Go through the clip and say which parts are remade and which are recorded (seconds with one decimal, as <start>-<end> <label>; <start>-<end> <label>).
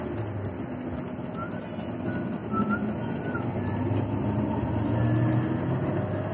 0.0-6.3 recorded